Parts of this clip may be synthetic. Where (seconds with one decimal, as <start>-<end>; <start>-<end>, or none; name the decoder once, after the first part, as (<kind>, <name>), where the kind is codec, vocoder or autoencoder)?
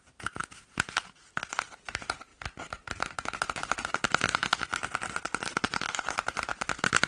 none